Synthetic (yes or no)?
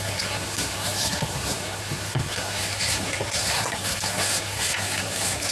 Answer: yes